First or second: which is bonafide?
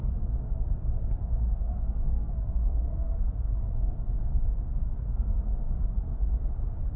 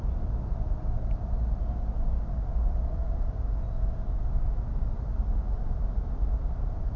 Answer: second